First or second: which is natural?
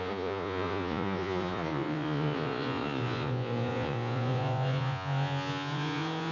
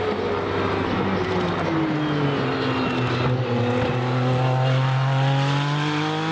second